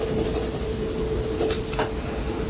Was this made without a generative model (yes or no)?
yes